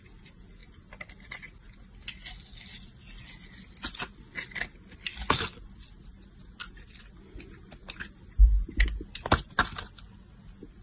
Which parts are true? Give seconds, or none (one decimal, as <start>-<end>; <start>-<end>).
0.0-10.8